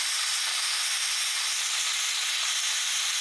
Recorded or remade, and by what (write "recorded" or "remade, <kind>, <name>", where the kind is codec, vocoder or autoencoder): recorded